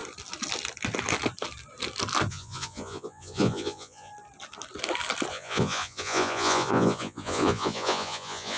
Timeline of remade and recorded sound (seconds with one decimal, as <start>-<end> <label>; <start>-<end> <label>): 0.0-2.3 recorded; 2.3-4.1 remade; 4.1-5.3 recorded; 5.3-8.6 remade